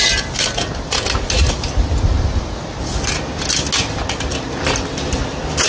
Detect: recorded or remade recorded